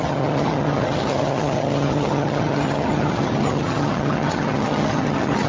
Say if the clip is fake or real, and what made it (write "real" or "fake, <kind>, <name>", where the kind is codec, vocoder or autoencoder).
fake, vocoder, HiFi-GAN